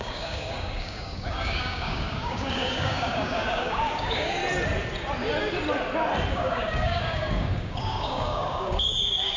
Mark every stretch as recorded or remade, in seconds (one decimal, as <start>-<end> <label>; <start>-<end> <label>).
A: 0.0-4.4 remade; 4.4-6.3 recorded; 6.3-9.4 remade